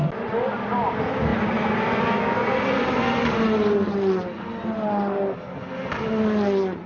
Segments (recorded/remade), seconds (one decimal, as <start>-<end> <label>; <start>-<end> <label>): 0.0-6.9 recorded